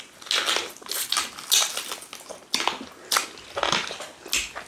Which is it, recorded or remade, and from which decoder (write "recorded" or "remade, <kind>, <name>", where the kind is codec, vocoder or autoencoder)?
recorded